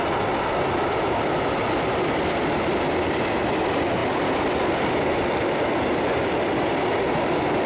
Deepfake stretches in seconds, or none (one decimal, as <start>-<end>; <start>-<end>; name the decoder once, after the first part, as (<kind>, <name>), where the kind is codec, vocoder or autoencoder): none